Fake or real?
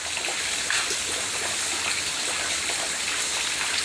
real